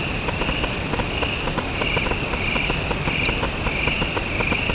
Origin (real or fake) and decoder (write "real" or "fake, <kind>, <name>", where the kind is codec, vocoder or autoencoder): real